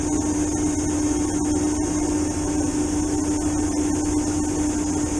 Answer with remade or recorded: recorded